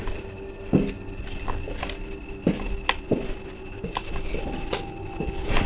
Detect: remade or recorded recorded